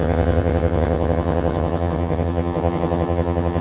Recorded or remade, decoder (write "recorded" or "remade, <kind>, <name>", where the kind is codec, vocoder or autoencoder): remade, vocoder, HiFi-GAN